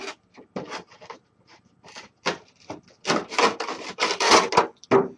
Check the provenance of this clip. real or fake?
real